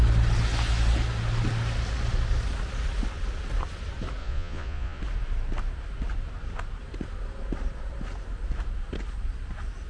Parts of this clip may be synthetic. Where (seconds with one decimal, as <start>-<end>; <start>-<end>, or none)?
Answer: 4.2-5.0